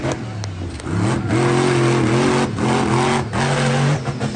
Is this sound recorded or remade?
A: recorded